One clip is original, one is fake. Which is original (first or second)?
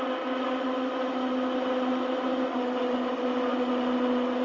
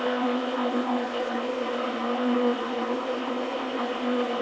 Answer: first